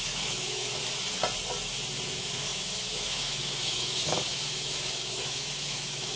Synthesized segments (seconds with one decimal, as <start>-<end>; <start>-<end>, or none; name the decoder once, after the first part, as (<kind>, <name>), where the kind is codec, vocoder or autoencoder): 0.0-0.8 (autoencoder, DAC-VAE); 2.1-6.2